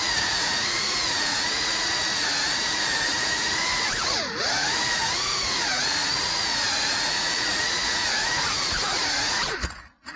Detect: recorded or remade remade